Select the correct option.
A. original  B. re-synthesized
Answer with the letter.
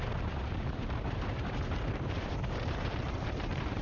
B